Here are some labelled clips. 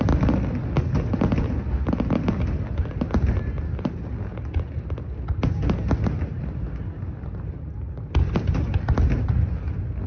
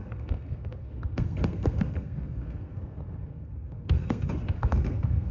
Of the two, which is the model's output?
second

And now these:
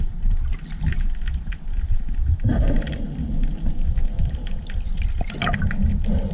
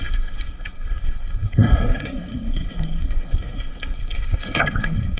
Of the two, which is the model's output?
second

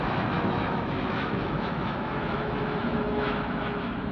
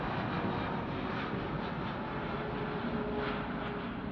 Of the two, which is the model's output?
first